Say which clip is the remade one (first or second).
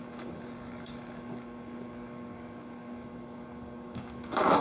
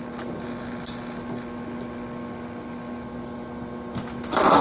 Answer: first